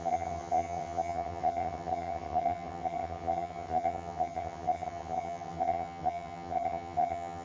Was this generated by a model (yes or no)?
yes